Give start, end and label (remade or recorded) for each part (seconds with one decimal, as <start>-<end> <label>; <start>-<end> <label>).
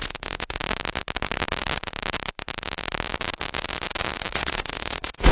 0.0-0.6 remade; 0.6-4.3 recorded; 4.3-5.3 remade